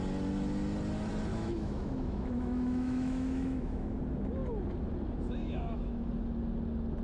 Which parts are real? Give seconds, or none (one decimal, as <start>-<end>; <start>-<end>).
0.0-1.3; 4.0-5.4; 6.1-7.0